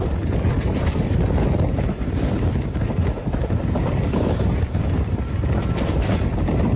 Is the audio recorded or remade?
remade